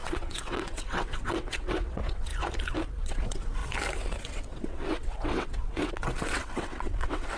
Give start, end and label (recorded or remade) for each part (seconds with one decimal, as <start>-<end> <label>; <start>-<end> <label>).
0.0-2.3 remade; 2.3-3.0 recorded; 3.0-3.6 remade; 3.6-4.2 recorded; 4.2-7.4 remade